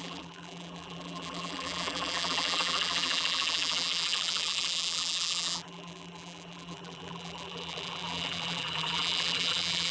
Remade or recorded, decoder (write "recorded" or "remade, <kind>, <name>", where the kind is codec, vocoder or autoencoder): remade, vocoder, BigVGAN v2